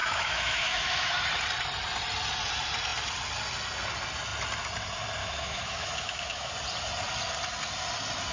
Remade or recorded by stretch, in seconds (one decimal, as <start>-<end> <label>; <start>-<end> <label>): 0.0-1.2 remade; 1.2-5.2 recorded; 5.2-6.5 remade; 6.5-8.3 recorded